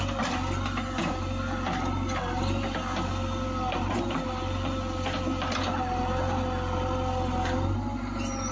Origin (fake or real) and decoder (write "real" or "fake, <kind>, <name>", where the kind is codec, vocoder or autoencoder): real